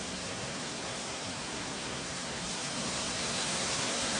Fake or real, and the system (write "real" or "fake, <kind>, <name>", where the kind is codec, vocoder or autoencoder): fake, codec, SNAC